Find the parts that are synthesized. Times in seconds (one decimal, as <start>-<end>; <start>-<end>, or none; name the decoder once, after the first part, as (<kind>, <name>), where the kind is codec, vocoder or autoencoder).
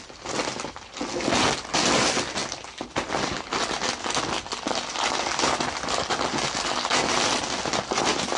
none